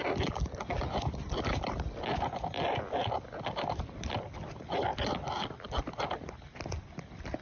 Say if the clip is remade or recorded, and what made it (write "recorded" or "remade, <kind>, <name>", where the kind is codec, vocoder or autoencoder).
recorded